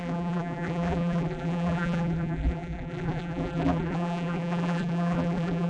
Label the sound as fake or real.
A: fake